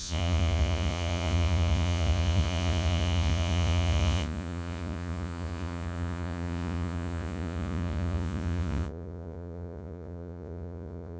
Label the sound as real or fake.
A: fake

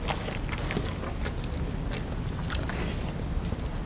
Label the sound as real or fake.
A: real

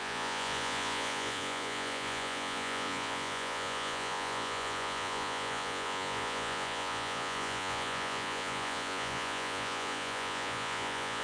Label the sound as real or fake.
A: fake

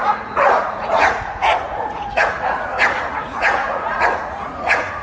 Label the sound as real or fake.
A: fake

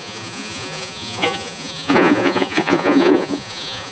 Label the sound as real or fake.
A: fake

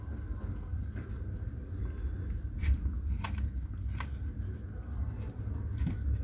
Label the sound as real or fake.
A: real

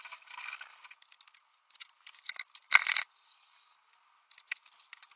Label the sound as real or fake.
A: real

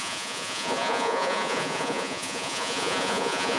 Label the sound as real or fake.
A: fake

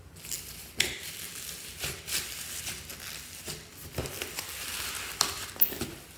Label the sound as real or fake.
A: real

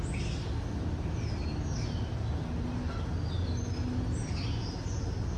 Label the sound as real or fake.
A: real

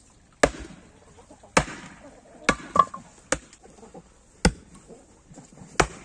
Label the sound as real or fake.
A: real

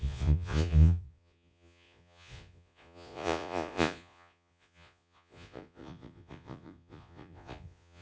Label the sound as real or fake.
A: fake